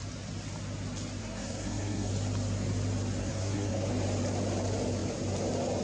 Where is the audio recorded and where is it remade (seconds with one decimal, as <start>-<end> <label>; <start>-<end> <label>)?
0.0-1.2 recorded; 1.2-2.1 remade; 2.1-3.2 recorded; 3.2-3.9 remade; 3.9-5.8 recorded